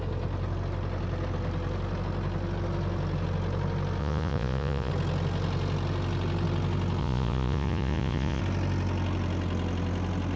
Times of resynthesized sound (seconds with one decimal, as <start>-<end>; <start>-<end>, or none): 4.0-4.9; 7.0-8.4

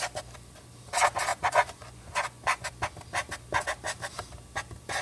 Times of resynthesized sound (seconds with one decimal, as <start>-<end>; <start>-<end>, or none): 1.3-2.7

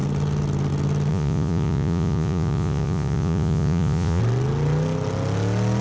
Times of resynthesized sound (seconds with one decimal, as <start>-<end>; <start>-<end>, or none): 1.1-4.2

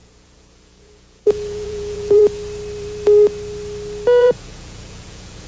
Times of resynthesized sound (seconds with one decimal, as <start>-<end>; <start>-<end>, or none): 0.0-2.2; 4.2-5.5

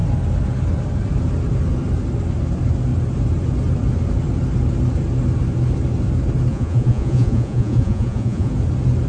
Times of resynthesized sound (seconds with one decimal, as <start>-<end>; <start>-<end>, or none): 6.5-8.5

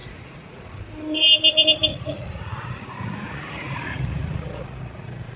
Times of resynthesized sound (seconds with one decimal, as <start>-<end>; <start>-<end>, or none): 0.0-0.8; 1.9-5.4

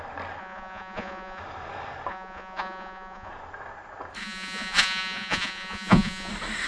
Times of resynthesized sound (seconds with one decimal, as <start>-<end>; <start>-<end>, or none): 0.4-1.4; 2.1-3.3; 4.2-6.3